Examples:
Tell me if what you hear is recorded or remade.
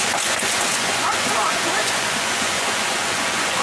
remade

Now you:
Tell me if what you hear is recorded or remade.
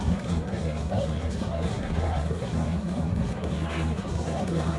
remade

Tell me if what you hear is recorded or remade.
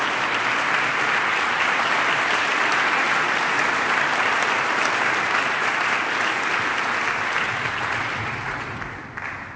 recorded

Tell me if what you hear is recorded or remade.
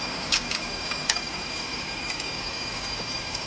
remade